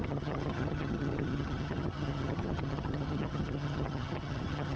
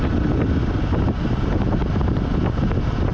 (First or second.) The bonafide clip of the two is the second